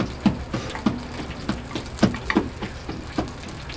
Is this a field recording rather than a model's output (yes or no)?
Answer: yes